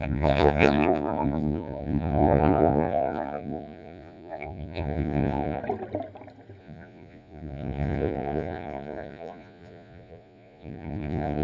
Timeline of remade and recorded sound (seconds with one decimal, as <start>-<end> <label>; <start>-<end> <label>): 0.0-5.6 remade; 5.6-6.6 recorded; 6.6-11.4 remade